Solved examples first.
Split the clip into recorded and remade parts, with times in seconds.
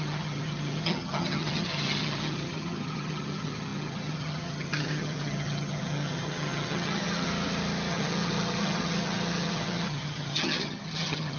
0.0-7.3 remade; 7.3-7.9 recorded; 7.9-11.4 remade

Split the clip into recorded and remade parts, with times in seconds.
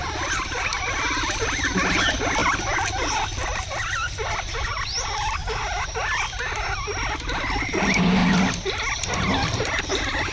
0.0-10.3 recorded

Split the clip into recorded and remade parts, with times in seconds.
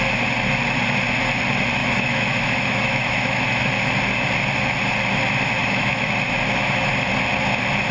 0.0-1.8 recorded; 1.8-3.7 remade; 3.7-5.6 recorded; 5.6-6.1 remade; 6.1-7.9 recorded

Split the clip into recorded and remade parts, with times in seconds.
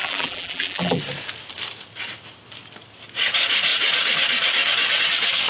0.0-1.0 remade; 1.0-5.5 recorded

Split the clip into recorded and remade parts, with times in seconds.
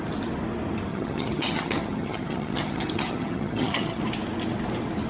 0.0-0.9 recorded; 0.9-4.0 remade; 4.0-5.1 recorded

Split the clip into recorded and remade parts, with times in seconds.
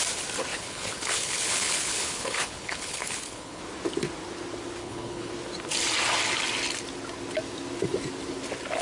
0.0-0.5 recorded; 0.5-3.6 remade; 3.6-4.8 recorded; 4.8-5.3 remade; 5.3-8.8 recorded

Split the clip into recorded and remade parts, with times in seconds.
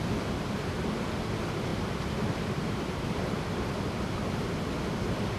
0.0-1.7 recorded; 1.7-4.9 remade; 4.9-5.4 recorded